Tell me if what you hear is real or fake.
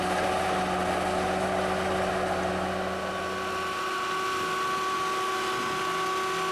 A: real